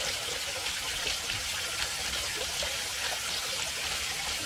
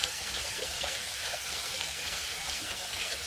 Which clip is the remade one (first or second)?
second